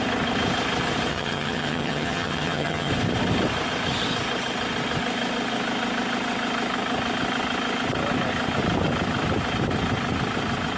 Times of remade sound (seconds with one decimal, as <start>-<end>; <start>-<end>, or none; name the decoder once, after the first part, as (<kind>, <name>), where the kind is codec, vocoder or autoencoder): 1.1-2.9 (vocoder, HiFi-GAN)